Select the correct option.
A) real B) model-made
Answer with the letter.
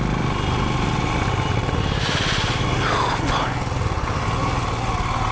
A